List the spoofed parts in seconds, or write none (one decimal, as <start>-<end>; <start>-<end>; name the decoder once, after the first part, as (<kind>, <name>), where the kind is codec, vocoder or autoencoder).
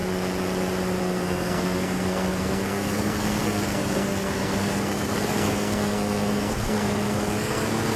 1.0-8.0 (codec, SNAC)